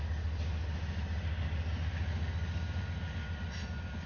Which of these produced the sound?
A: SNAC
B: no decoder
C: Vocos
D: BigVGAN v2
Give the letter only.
B